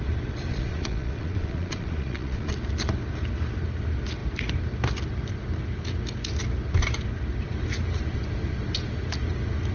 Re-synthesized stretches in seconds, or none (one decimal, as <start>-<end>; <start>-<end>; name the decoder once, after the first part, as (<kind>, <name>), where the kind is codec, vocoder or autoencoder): 0.5-2.5 (vocoder, Vocos)

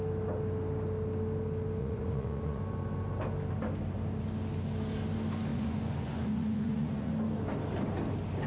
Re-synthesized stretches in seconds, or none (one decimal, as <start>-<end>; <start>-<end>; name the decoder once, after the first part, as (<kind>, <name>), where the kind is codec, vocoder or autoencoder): 1.8-2.6 (vocoder, Vocos); 5.5-7.1

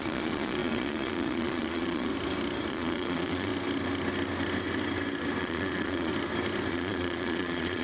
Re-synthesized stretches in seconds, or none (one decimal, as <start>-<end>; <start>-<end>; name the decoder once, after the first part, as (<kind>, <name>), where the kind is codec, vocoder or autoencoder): 0.0-2.1 (vocoder, Vocos); 2.7-3.5; 5.4-6.1; 6.7-7.8

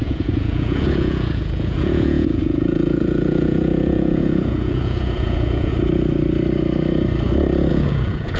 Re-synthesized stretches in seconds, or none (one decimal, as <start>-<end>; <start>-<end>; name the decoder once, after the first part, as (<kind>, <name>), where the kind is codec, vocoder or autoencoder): 0.0-5.7 (vocoder, Vocos); 7.7-8.4

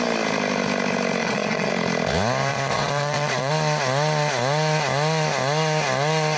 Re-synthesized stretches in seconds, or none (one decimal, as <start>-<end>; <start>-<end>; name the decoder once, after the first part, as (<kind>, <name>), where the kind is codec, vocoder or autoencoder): 1.2-1.7 (vocoder, Vocos); 2.5-3.5